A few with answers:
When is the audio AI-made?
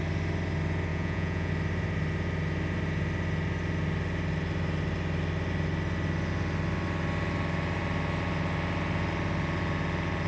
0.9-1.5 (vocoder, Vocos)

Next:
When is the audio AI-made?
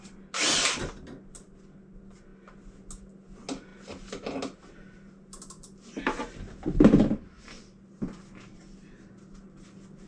none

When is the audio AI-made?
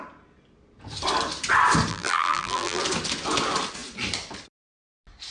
1.9-2.8 (vocoder, BigVGAN v2)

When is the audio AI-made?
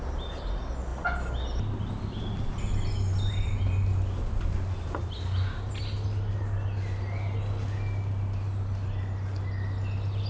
none